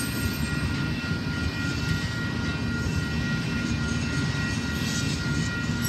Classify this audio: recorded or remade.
recorded